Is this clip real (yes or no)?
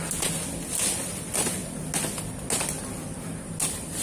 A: yes